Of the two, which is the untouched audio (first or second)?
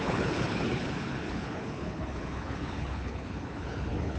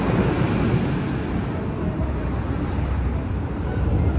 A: second